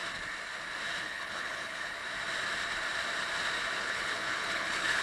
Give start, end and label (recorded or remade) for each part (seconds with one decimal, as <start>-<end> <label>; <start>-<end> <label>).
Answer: 0.0-1.0 recorded; 1.0-2.0 remade; 2.0-3.8 recorded; 3.8-5.0 remade